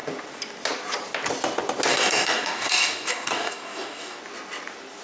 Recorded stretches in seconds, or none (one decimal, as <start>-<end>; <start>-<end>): 0.0-1.9; 4.2-5.0